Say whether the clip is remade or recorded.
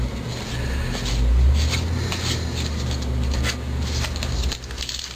remade